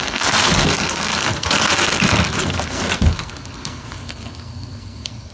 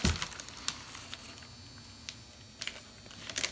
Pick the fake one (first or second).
first